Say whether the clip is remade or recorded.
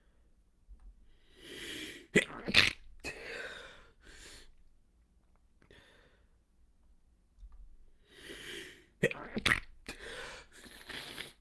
recorded